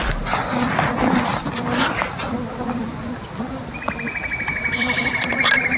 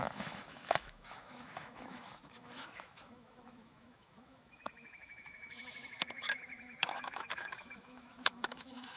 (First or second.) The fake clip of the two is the second